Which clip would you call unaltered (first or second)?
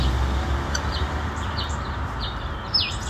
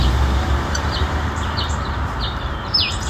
first